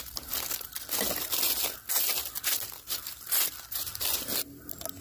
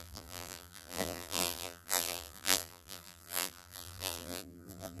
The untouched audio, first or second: first